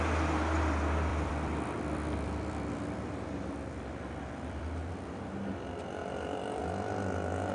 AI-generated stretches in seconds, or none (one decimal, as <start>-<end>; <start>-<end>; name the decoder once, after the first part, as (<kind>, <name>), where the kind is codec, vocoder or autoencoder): 1.1-4.9 (vocoder, BigVGAN v2); 6.0-6.6